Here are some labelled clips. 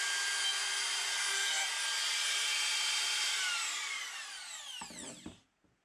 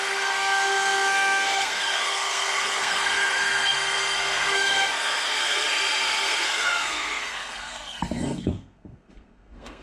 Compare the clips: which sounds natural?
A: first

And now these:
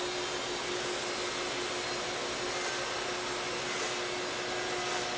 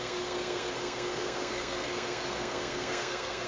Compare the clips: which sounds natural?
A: first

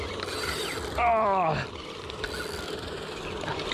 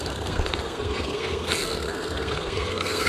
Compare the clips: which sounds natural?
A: first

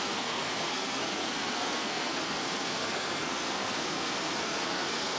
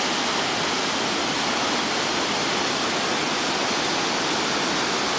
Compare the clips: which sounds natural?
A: second